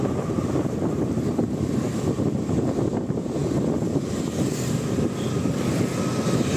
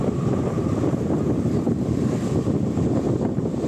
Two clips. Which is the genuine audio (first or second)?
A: first